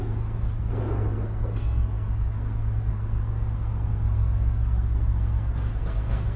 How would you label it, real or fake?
fake